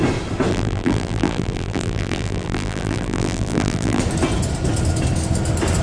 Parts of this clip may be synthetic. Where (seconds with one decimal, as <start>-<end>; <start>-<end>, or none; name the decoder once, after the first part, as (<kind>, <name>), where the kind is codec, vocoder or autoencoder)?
0.5-4.0 (vocoder, BigVGAN v2)